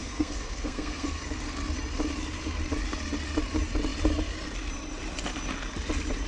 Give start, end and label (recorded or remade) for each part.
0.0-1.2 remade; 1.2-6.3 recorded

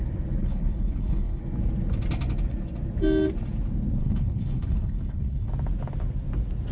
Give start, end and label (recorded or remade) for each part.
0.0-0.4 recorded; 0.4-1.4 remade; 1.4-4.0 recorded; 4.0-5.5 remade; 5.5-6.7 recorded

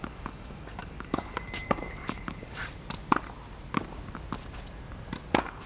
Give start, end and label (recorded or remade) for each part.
0.0-2.6 remade; 2.6-5.3 recorded; 5.3-5.7 remade